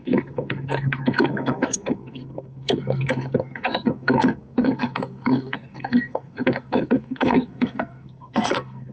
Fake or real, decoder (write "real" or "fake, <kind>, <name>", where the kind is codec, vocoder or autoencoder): fake, codec, SNAC